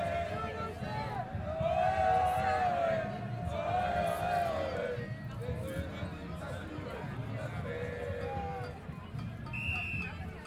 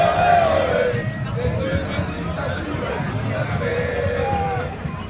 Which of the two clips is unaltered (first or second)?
first